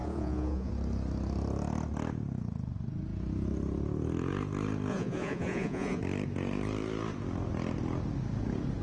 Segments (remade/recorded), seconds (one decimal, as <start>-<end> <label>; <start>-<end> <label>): 0.0-0.7 remade; 0.7-4.9 recorded; 4.9-6.0 remade; 6.0-8.8 recorded